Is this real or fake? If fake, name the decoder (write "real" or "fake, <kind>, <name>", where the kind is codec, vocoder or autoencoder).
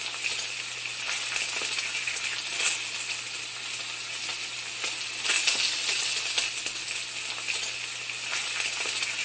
real